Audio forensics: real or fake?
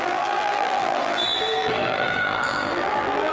fake